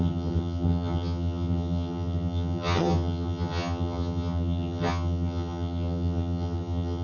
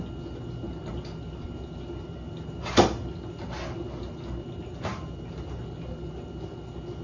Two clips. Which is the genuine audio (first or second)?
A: second